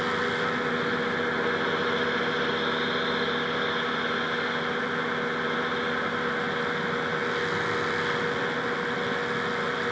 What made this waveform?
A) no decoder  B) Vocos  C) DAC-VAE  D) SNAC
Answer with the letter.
A